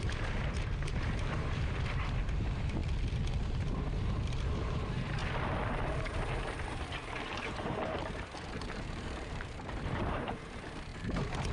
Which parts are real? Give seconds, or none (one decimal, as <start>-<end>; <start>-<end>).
2.8-3.4; 5.2-7.4